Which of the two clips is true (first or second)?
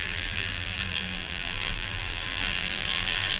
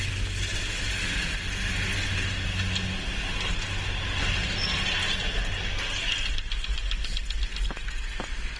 second